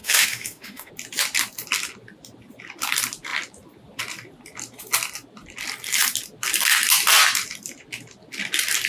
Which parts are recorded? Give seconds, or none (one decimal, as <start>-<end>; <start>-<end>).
0.9-8.9